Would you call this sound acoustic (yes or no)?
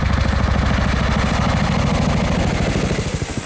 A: yes